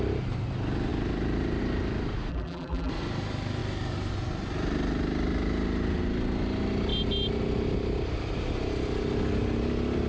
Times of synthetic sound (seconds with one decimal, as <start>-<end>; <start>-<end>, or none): 2.3-2.9